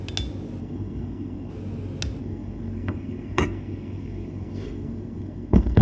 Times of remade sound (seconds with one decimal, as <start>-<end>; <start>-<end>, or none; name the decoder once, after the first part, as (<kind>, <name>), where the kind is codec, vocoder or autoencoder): 0.6-1.5 (codec, SNAC); 2.2-5.8